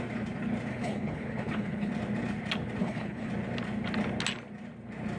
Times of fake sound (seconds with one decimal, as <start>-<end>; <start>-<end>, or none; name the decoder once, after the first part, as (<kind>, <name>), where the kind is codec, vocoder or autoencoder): 0.7-1.9 (codec, HILCodec); 2.8-3.3